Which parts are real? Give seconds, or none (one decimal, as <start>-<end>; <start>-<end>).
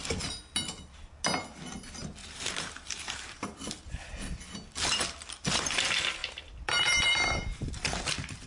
0.0-2.2; 3.5-6.2; 7.7-8.5